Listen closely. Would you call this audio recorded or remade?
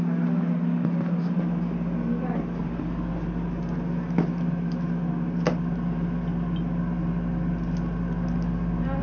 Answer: recorded